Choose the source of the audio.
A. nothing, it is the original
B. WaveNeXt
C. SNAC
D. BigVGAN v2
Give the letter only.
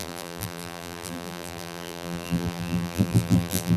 D